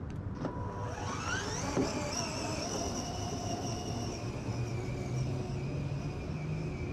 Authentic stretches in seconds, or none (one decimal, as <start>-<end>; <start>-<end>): 0.0-6.9

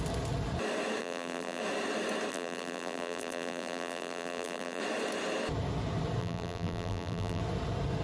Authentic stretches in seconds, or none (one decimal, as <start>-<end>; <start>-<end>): 0.0-1.0; 1.6-2.3; 4.8-6.2; 7.4-8.0